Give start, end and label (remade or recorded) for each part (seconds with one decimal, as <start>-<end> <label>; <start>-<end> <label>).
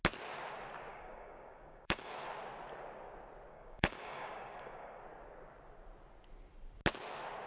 0.0-0.9 recorded; 0.9-2.1 remade; 2.1-3.5 recorded; 3.5-5.0 remade; 5.0-7.5 recorded